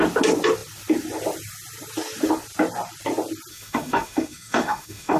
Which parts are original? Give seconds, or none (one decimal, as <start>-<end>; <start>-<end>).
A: 0.0-3.5